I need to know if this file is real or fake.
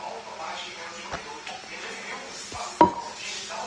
real